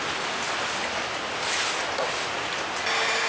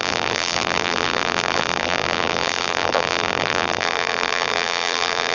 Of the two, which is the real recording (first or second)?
first